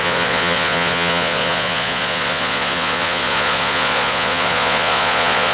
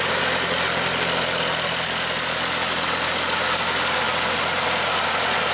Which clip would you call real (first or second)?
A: second